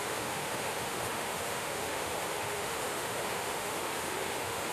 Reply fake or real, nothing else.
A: fake